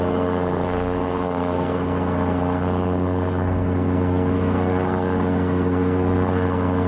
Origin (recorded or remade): remade